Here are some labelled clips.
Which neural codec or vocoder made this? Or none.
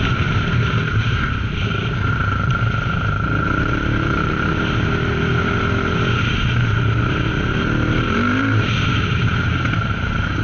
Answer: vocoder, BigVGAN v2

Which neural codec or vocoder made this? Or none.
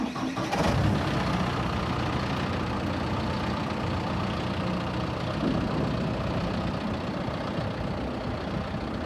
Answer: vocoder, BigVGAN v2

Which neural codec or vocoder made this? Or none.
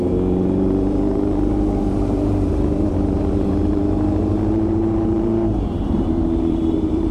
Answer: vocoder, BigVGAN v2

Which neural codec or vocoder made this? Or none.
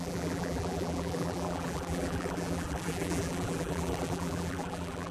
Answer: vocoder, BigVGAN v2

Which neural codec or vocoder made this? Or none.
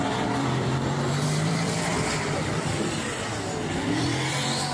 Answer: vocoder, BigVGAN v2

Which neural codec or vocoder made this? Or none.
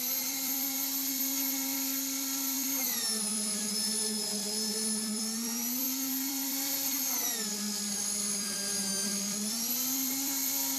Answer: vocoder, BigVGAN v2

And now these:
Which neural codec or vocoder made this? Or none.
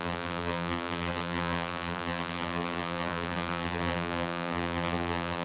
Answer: vocoder, BigVGAN v2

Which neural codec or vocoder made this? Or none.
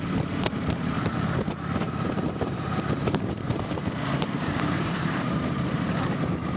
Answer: vocoder, BigVGAN v2